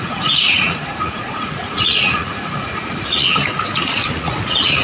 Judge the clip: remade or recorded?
remade